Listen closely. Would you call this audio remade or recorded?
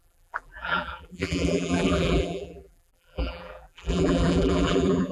remade